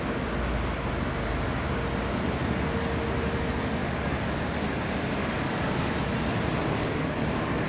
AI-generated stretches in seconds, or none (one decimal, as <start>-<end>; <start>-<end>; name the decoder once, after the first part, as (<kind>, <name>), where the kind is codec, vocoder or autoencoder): 3.8-4.4 (codec, DAC); 5.2-6.0; 6.6-7.7